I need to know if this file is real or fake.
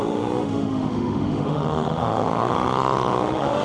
fake